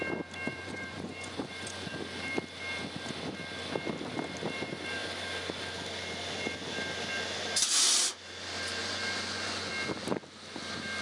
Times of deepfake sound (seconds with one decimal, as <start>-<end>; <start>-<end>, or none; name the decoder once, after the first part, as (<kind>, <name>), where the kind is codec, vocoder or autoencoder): 0.5-1.9 (vocoder, Vocos); 8.8-9.7